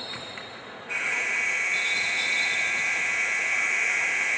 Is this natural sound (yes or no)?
no